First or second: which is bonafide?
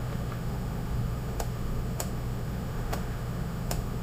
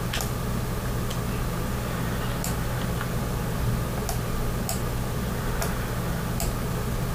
second